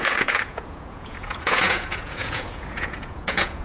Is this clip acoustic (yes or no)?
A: no